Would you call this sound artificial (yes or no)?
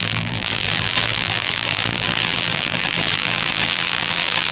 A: yes